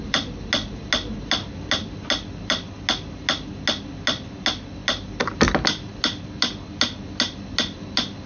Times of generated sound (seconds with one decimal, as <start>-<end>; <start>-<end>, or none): none